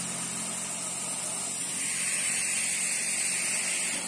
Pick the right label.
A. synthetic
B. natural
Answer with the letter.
B